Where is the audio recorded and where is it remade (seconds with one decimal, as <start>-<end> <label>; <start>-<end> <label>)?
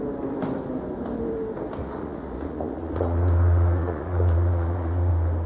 0.0-1.8 recorded; 1.8-5.1 remade; 5.1-5.5 recorded